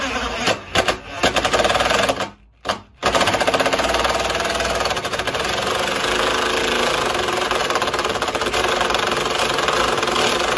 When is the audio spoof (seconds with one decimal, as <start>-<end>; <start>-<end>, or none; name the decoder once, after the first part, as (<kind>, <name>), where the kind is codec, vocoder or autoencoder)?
none